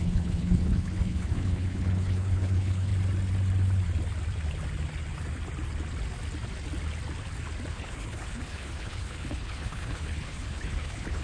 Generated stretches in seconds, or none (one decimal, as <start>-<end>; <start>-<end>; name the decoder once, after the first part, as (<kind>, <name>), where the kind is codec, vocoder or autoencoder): 0.0-2.9 (codec, HILCodec); 7.7-11.2